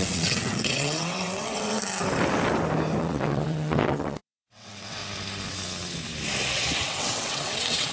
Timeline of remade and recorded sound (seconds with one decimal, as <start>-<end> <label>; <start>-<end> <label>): 0.0-1.8 remade; 1.8-3.0 recorded; 3.0-5.0 remade; 5.0-6.8 recorded; 6.8-7.9 remade